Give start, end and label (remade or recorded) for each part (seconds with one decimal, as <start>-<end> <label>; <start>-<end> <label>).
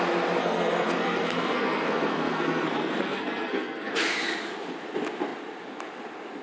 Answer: 0.0-0.4 recorded; 0.4-3.9 remade; 3.9-6.4 recorded